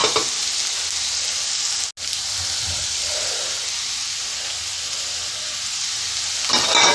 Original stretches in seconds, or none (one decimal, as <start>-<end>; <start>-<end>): 0.0-6.9